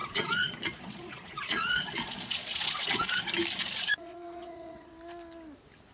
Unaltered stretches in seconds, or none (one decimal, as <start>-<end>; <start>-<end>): 3.2-3.6; 4.9-5.9

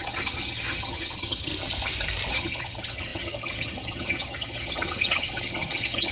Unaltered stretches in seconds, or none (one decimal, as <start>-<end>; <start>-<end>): 1.5-2.3

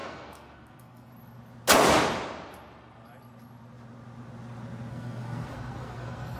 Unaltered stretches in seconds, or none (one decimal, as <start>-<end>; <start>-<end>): 1.1-4.9

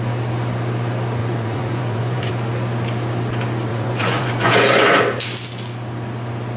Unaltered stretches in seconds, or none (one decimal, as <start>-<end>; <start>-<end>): 0.0-1.2; 2.3-3.7; 5.0-6.6